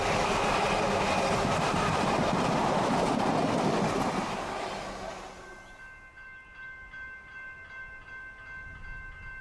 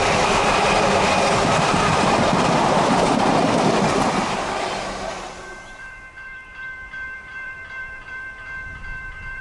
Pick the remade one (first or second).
second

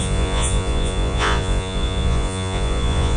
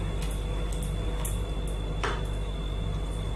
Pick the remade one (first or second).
first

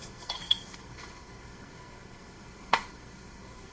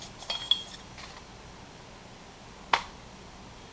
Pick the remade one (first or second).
first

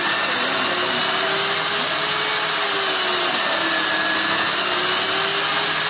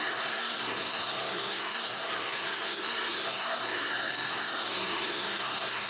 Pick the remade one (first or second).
second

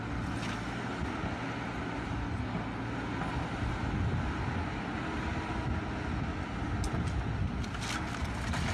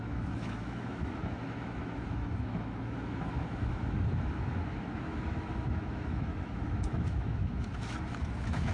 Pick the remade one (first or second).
second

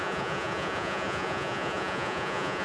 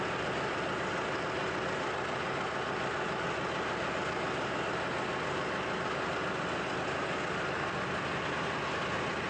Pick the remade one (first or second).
first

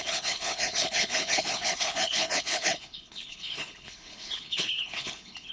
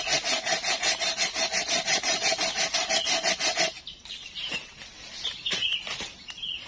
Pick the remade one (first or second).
first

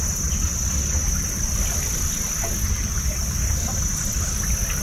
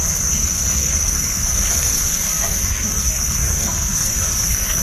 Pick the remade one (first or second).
second